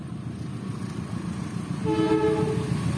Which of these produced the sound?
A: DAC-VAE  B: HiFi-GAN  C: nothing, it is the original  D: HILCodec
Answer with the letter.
C